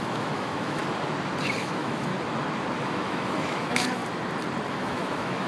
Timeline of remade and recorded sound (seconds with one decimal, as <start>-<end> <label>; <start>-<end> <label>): 0.0-0.8 remade; 0.8-1.6 recorded; 1.6-2.1 remade; 2.1-2.8 recorded; 2.8-4.0 remade; 4.0-4.7 recorded; 4.7-5.5 remade